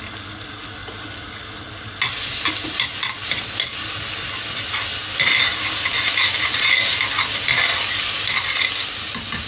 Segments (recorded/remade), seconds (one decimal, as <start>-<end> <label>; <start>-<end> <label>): 0.0-9.5 recorded